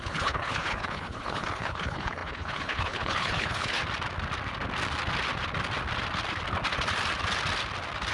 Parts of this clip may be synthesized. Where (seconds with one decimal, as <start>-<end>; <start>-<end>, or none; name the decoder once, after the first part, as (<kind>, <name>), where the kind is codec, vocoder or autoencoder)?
0.0-3.8 (codec, HILCodec)

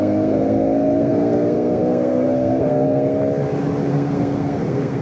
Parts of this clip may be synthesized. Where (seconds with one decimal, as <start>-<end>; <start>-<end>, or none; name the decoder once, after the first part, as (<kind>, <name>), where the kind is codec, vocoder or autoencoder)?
0.0-3.2 (codec, SNAC); 3.9-5.0

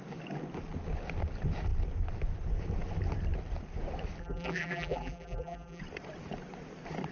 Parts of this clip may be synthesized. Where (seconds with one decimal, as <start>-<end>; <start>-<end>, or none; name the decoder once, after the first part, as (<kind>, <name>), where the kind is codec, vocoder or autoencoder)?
4.2-5.8 (vocoder, BigVGAN v2)

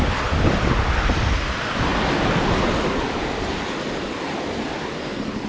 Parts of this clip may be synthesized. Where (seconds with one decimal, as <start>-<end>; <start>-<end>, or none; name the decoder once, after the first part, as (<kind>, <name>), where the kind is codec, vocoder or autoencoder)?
none

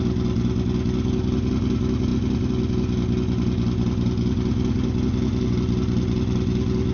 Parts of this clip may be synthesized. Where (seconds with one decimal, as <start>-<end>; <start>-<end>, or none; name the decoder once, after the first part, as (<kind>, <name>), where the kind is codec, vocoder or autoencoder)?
none

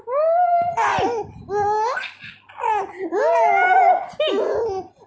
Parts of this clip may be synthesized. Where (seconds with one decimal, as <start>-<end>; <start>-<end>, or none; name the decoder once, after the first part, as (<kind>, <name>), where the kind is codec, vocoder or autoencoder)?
none